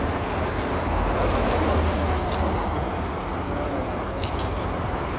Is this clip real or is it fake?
real